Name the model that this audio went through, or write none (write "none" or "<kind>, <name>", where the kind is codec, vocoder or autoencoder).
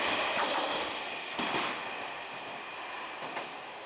none